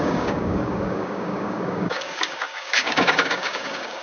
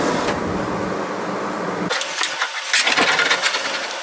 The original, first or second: second